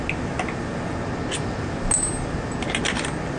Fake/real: real